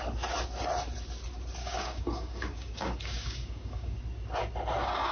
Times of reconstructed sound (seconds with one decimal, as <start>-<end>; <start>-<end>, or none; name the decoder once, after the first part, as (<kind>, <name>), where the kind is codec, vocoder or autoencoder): 1.6-4.0 (codec, DAC)